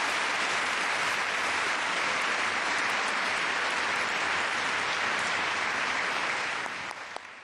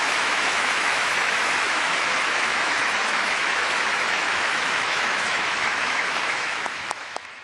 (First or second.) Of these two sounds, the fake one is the second